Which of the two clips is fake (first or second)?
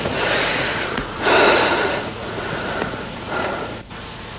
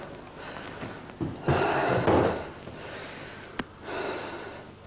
first